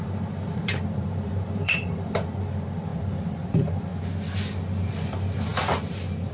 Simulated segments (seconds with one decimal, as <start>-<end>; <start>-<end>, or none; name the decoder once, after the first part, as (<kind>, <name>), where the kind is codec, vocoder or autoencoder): 0.0-2.9 (vocoder, BigVGAN v2); 3.5-3.9; 4.9-6.3

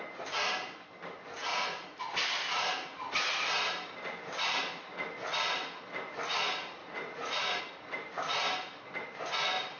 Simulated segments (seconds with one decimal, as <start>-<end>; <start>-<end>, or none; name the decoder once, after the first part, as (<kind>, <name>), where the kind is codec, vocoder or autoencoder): 1.5-2.0 (vocoder, Vocos); 6.8-7.6

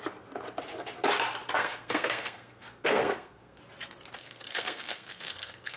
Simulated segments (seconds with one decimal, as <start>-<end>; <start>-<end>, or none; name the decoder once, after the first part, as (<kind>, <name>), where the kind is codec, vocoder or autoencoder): 1.6-3.6 (codec, SNAC); 4.2-5.8

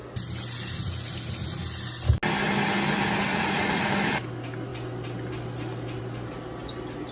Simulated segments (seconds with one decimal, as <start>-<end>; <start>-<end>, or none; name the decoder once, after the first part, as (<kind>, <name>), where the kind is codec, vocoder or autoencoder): 3.3-3.9 (vocoder, Vocos)

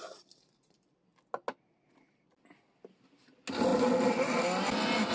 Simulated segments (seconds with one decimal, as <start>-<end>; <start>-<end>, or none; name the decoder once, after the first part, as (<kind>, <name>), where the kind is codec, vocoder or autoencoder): none

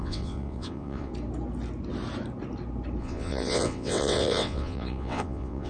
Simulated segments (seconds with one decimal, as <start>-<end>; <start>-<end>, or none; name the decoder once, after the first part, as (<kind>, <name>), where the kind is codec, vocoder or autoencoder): 0.0-1.1 (vocoder, WaveNeXt); 3.0-5.7